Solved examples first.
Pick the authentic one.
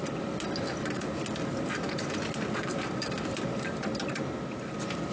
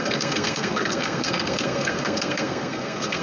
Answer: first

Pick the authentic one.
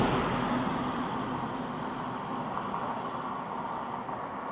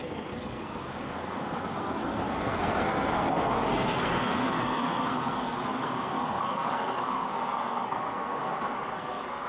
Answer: first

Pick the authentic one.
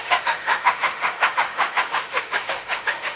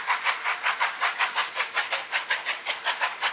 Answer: second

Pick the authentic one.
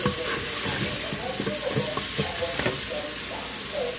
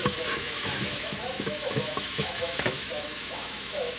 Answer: first